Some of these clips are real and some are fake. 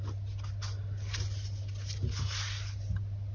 real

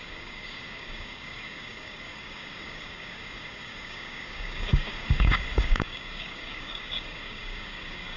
fake